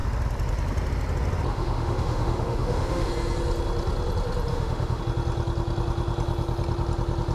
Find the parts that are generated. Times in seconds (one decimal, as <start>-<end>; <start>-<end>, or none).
1.5-3.1; 4.5-5.0